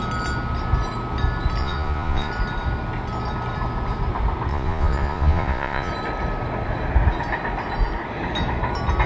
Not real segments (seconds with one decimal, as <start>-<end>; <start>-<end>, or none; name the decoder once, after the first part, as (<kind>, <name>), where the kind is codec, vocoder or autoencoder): 1.6-2.3 (vocoder, Vocos); 4.5-5.9